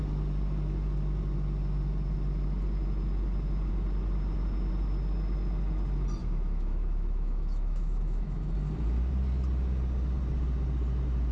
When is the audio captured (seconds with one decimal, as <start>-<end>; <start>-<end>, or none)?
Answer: 0.0-6.2; 8.5-11.3